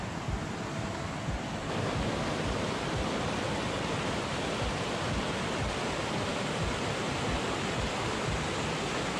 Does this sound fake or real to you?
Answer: real